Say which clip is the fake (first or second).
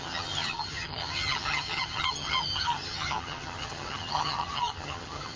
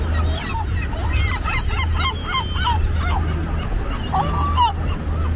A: first